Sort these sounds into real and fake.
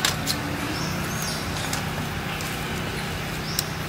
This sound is real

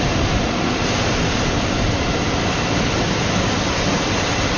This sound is fake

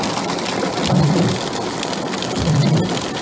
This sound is real